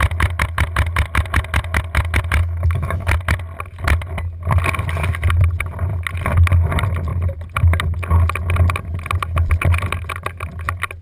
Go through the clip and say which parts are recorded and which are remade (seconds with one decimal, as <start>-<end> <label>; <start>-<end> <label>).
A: 0.0-2.4 recorded; 2.4-3.1 remade; 3.1-11.0 recorded